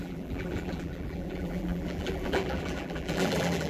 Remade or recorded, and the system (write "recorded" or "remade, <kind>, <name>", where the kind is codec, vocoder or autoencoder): remade, vocoder, BigVGAN v2